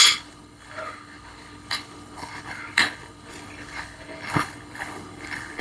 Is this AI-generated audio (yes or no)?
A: yes